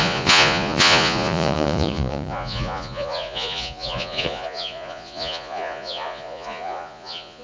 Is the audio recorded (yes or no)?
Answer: no